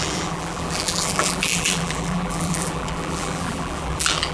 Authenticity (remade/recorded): remade